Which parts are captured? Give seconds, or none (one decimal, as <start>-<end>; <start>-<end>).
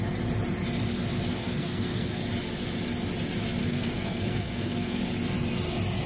0.0-1.3; 2.2-3.6; 5.0-6.1